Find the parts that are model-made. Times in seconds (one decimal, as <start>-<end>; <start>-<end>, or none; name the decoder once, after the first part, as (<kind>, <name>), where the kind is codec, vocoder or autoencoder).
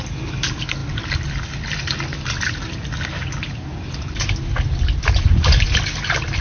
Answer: none